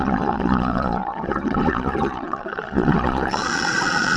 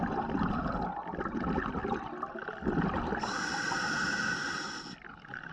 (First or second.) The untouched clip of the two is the second